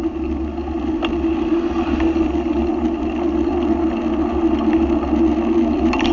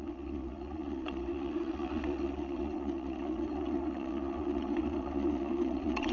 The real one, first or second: first